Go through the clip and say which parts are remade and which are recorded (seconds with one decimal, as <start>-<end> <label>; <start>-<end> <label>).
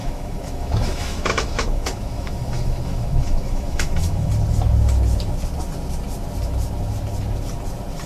0.0-4.3 remade; 4.3-8.1 recorded